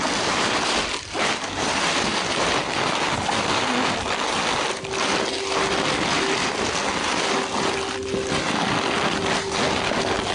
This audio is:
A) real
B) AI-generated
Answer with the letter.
A